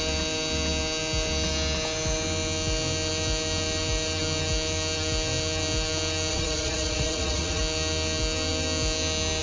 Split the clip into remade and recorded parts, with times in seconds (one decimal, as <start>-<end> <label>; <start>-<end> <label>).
0.0-6.3 recorded; 6.3-7.6 remade; 7.6-9.4 recorded